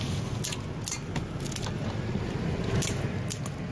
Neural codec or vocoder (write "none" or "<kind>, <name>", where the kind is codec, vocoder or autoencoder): none